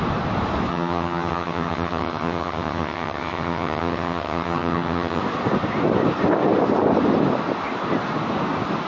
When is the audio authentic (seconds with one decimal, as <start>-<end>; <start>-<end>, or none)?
0.0-0.7; 5.2-8.9